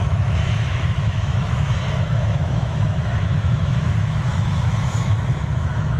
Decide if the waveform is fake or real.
fake